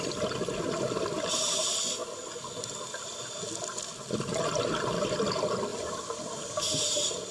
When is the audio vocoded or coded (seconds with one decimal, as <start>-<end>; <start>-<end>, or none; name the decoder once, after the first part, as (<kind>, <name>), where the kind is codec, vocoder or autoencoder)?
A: 5.7-6.4 (vocoder, BigVGAN v2)